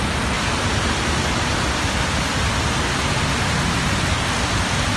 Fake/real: real